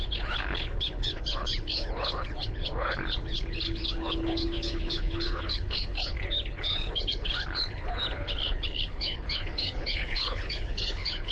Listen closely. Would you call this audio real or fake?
fake